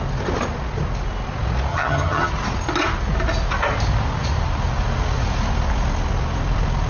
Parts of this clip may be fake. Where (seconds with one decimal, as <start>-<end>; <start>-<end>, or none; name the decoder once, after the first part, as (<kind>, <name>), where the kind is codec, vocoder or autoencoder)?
1.7-2.3 (vocoder, HiFi-GAN)